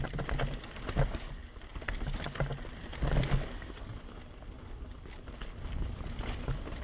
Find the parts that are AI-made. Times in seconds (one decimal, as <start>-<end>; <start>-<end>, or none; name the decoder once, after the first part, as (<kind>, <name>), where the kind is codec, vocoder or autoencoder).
none